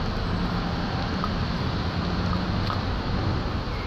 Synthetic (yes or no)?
no